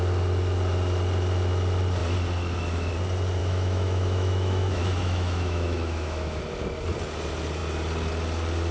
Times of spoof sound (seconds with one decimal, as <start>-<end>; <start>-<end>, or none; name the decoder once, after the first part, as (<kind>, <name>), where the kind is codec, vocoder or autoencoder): 3.4-6.4 (autoencoder, DAC-VAE)